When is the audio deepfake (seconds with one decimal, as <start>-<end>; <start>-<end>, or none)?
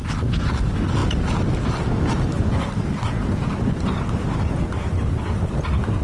none